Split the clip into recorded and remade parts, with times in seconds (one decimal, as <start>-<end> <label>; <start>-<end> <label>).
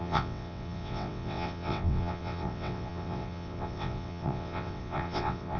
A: 0.0-5.6 remade